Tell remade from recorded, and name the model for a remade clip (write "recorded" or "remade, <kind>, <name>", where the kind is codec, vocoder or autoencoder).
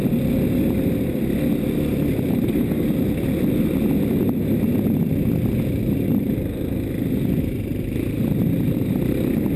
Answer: recorded